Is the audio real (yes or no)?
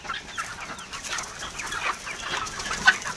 yes